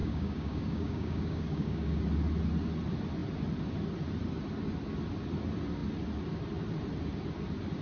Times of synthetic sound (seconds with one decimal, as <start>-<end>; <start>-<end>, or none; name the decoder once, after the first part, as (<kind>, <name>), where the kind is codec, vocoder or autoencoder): 0.0-2.0 (codec, DAC)

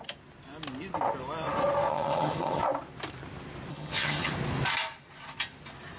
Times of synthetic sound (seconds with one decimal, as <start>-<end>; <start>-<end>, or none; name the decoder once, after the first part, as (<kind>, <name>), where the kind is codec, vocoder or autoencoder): 1.9-2.6 (vocoder, HiFi-GAN); 3.7-4.3

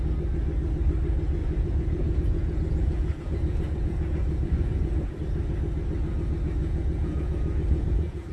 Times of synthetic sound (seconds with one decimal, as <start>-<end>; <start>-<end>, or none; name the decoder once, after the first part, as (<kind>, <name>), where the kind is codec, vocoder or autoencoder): 1.4-5.2 (vocoder, Vocos); 6.6-8.3

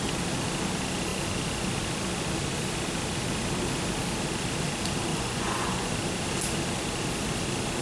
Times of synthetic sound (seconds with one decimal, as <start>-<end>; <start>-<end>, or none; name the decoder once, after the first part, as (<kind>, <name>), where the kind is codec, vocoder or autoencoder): 5.1-5.9 (vocoder, Vocos)

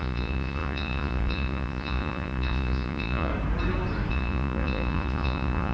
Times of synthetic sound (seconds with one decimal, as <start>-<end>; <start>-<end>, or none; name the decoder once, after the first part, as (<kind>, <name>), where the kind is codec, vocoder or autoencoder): 0.0-3.3 (vocoder, Vocos); 4.1-5.7

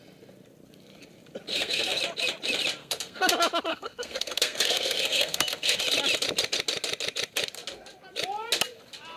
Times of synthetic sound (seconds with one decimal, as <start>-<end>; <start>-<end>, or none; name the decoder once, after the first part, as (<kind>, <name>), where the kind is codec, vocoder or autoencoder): 1.5-2.0 (codec, SNAC); 2.8-3.3; 3.7-5.8

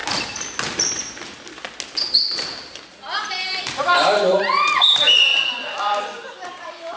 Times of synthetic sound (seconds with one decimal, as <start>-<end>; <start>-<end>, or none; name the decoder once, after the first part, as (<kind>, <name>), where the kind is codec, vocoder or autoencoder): 3.3-5.3 (vocoder, BigVGAN v2); 5.8-7.0

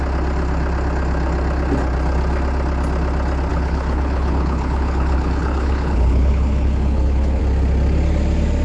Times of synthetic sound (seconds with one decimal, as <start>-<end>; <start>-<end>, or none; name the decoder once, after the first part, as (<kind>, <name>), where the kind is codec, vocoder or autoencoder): 3.5-7.4 (codec, HILCodec)